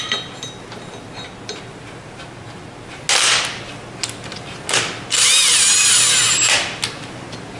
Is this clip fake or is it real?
real